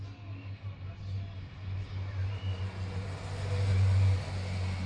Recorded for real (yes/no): yes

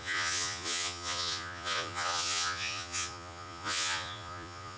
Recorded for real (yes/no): no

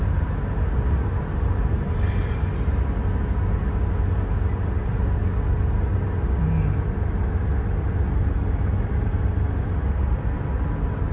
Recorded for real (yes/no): yes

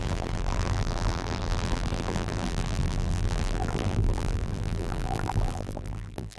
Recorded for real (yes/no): no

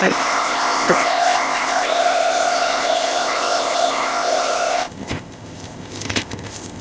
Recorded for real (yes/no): no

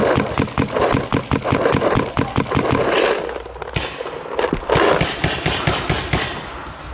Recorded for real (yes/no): yes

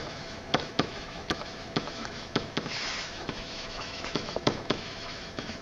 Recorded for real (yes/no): no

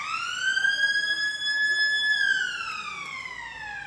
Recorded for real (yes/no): yes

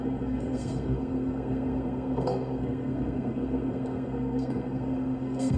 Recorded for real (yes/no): no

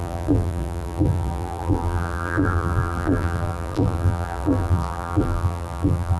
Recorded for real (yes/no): no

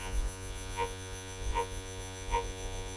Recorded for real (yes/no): no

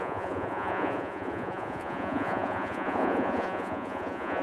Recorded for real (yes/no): no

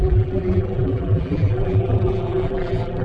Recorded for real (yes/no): no